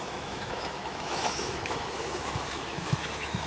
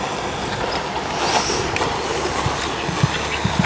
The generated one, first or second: first